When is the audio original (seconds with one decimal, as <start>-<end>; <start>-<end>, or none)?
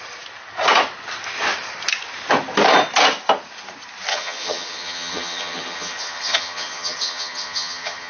0.0-4.1